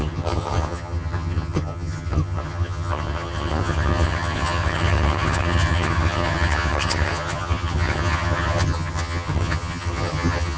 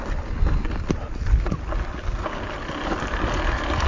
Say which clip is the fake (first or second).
first